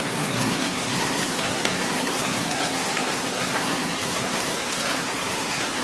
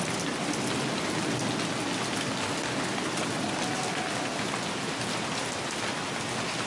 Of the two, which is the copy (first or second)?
first